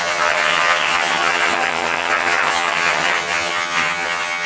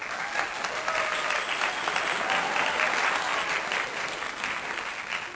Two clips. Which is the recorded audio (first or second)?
second